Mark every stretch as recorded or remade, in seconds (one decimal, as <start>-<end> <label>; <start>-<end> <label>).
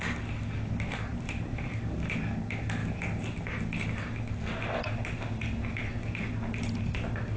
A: 0.0-1.1 recorded; 1.1-1.7 remade; 1.7-7.4 recorded